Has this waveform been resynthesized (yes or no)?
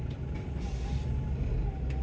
no